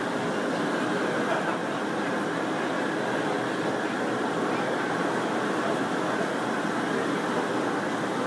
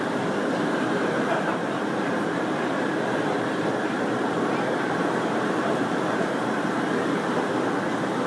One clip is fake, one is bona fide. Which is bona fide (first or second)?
first